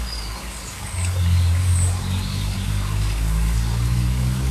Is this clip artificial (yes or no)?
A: yes